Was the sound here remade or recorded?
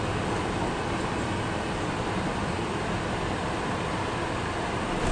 recorded